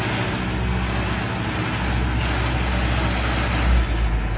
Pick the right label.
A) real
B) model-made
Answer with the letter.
A